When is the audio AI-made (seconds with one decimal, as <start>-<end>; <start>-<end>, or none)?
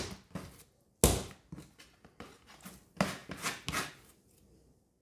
none